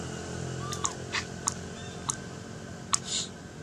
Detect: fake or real real